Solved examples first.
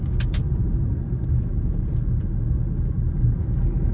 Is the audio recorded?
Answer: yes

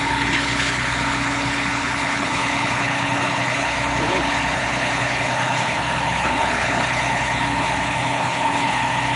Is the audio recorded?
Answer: no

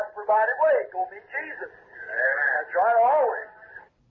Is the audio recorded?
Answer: yes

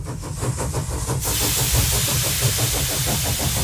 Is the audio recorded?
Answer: yes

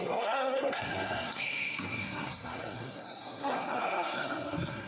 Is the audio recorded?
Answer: no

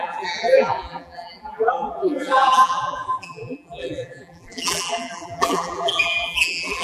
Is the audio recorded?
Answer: no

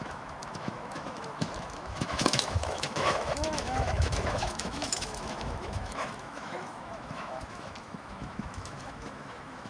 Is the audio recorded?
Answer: no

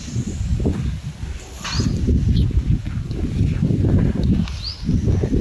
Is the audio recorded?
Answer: yes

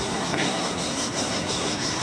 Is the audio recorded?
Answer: no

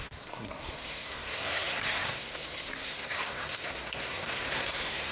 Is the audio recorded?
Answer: no